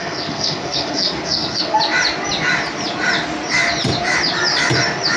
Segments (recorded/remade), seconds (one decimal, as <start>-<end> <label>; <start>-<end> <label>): 0.0-1.8 remade; 1.8-5.2 recorded